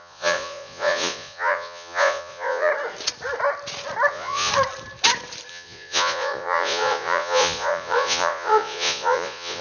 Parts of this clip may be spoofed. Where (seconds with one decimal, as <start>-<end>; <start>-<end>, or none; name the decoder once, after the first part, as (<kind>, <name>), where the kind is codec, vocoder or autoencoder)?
0.0-2.7 (vocoder, Vocos); 4.1-4.5; 5.5-9.6